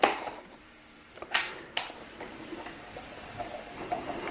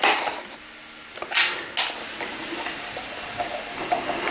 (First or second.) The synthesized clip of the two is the first